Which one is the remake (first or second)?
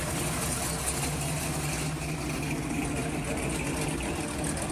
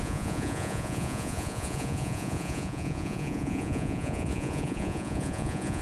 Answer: second